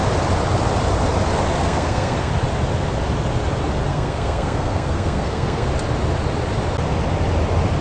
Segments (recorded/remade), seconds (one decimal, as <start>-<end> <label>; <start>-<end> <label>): 0.0-1.6 recorded; 1.6-2.3 remade; 2.3-3.9 recorded; 3.9-5.7 remade; 5.7-7.8 recorded